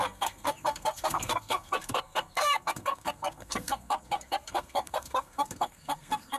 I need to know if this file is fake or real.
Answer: fake